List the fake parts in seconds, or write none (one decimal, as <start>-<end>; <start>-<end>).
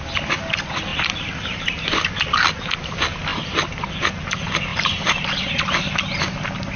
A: 4.7-5.4